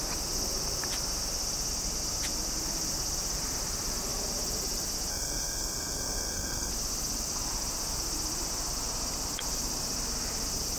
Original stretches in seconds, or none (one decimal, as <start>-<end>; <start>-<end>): 0.0-5.1; 6.7-10.8